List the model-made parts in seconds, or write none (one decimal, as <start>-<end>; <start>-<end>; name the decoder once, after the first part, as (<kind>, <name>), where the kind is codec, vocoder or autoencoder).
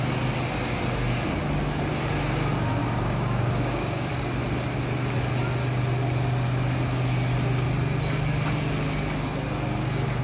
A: 2.8-4.1 (codec, DAC)